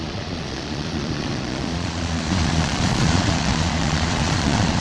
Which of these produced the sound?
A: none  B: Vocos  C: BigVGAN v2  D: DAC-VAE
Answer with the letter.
B